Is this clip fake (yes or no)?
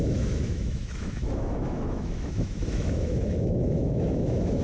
yes